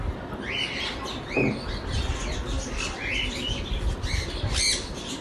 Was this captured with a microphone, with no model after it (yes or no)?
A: yes